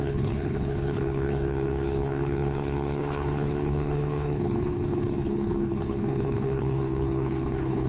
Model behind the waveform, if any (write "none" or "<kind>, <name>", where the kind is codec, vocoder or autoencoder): codec, HILCodec